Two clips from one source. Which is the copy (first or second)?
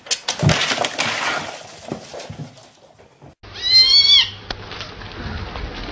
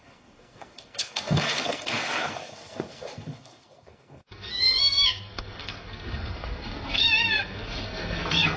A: second